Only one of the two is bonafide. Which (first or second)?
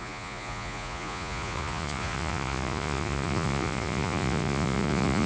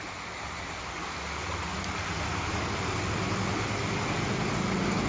second